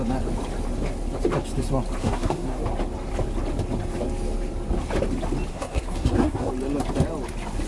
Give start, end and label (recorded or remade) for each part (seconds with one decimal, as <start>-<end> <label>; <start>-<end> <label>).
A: 0.0-2.0 recorded; 2.0-2.6 remade; 2.6-5.5 recorded; 5.5-6.5 remade; 6.5-7.7 recorded